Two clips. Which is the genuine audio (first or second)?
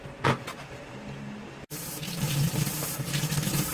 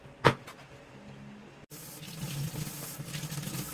second